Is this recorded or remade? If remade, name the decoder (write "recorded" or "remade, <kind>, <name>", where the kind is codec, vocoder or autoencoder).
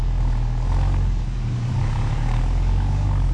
remade, codec, DAC